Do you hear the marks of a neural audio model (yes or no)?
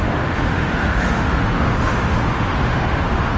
yes